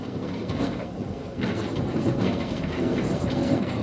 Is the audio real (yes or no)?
no